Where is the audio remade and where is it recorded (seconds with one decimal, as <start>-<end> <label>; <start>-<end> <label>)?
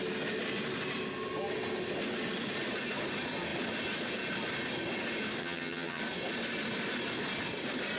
0.0-5.4 recorded; 5.4-6.0 remade; 6.0-8.0 recorded